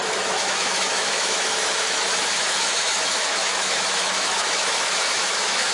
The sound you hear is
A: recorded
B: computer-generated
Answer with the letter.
B